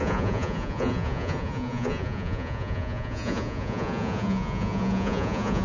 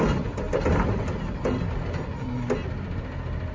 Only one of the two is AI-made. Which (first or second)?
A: first